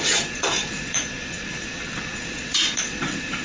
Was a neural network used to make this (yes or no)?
yes